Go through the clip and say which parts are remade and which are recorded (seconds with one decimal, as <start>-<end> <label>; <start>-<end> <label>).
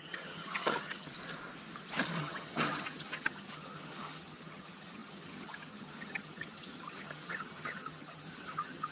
0.0-1.1 remade; 1.1-2.2 recorded; 2.2-8.9 remade